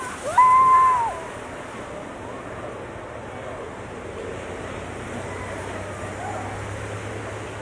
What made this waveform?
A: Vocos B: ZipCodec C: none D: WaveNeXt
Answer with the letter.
C